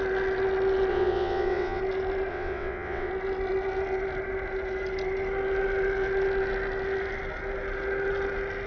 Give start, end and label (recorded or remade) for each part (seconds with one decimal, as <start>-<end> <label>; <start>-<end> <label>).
0.0-0.9 recorded; 0.9-1.8 remade; 1.8-2.3 recorded; 2.3-3.1 remade; 3.1-8.7 recorded